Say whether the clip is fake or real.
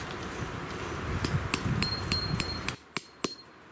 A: real